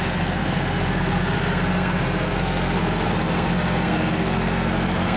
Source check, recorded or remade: remade